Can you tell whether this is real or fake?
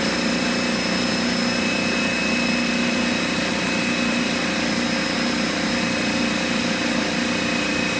real